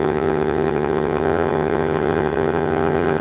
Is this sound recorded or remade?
remade